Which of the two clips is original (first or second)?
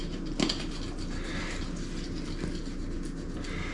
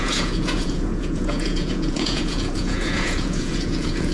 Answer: first